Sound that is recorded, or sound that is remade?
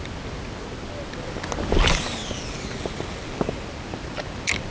recorded